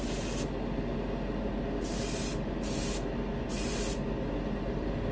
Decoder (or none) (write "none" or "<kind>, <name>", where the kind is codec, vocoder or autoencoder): none